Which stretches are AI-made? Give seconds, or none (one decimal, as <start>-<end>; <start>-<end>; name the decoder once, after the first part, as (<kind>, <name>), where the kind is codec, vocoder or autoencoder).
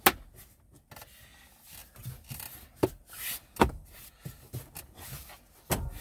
none